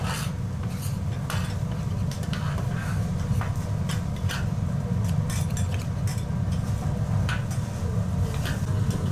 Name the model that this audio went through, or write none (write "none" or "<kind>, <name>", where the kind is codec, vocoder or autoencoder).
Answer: none